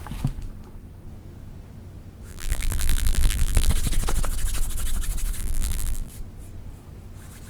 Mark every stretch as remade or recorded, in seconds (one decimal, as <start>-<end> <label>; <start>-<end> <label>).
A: 0.0-2.3 recorded; 2.3-3.7 remade; 3.7-5.4 recorded; 5.4-6.1 remade; 6.1-7.5 recorded